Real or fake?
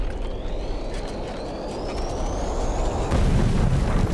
real